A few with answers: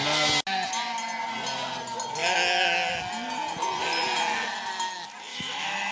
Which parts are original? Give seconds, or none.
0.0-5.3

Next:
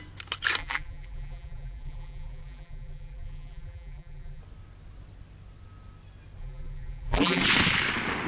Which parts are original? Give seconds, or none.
0.0-0.6; 4.4-6.4; 7.4-8.3

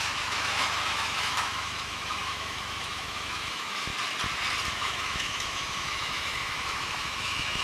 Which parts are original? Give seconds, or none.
3.9-4.8

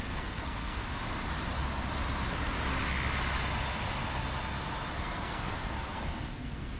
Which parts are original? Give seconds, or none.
0.8-4.9

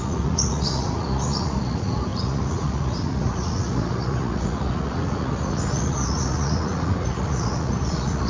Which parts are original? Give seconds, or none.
none

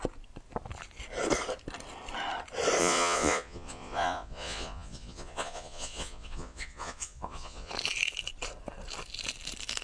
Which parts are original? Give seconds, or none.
0.0-2.8; 7.7-9.8